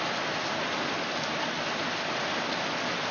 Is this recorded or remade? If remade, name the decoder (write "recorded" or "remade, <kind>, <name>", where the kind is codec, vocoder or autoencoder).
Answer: recorded